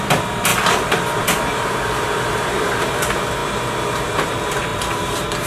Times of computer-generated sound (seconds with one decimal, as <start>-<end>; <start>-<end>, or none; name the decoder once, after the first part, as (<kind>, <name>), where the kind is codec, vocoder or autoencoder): 0.0-0.5 (vocoder, BigVGAN v2); 2.8-3.4; 4.1-4.7